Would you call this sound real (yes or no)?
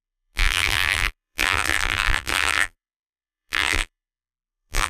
no